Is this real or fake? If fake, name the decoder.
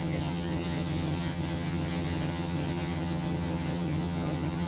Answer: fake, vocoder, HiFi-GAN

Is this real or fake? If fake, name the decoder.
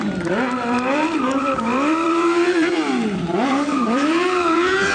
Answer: fake, vocoder, BigVGAN v2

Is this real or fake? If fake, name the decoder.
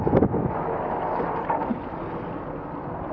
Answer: real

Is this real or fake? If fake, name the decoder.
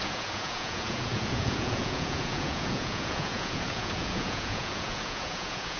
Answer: fake, vocoder, Vocos